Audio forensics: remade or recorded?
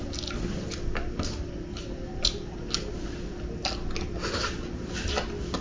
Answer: recorded